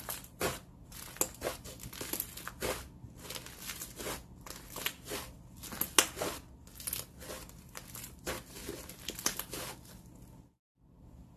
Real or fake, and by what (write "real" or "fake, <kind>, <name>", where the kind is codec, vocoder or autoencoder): real